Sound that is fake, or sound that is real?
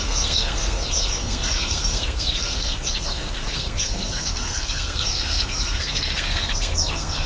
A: fake